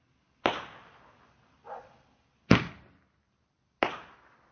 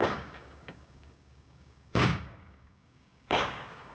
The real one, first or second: first